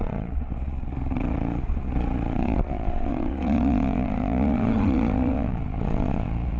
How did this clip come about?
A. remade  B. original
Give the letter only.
A